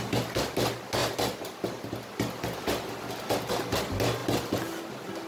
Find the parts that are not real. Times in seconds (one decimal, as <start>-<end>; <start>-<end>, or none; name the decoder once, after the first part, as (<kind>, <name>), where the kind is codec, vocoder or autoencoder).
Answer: none